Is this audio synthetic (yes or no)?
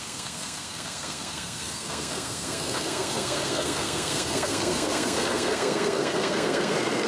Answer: yes